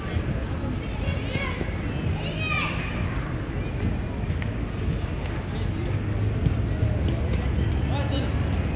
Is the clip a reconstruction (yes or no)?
no